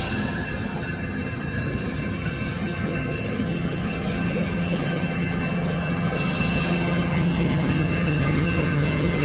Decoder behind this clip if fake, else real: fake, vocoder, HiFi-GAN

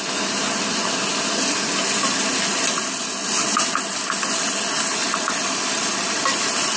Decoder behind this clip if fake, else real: real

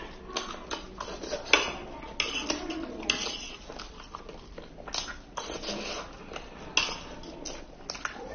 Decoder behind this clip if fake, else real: real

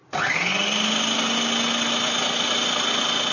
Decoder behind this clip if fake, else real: real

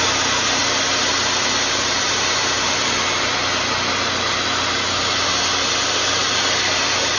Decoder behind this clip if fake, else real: real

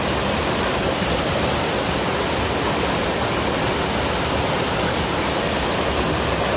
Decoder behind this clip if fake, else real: real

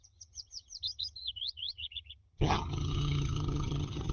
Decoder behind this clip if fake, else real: fake, vocoder, HiFi-GAN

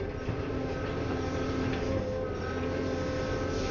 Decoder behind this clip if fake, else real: real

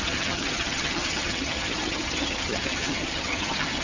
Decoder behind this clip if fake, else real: fake, vocoder, HiFi-GAN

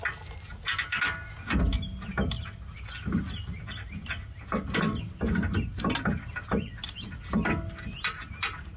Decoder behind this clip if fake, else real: real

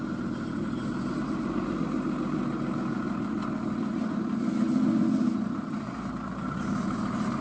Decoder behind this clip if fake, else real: real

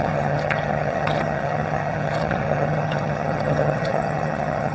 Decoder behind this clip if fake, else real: fake, vocoder, HiFi-GAN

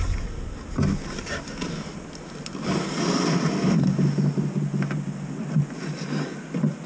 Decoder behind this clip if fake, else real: real